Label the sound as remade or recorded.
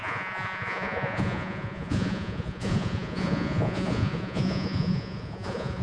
remade